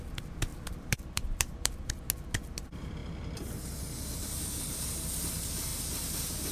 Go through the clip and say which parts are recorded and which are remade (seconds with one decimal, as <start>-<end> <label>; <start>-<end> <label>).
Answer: 0.0-0.5 recorded; 0.5-1.9 remade; 1.9-5.7 recorded; 5.7-6.5 remade